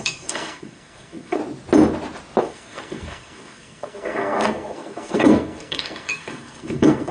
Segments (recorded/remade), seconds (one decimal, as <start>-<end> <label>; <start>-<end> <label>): 0.0-1.4 remade; 1.4-2.4 recorded; 2.4-7.1 remade